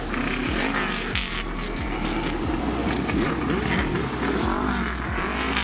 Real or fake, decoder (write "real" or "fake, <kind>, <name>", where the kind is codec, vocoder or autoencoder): real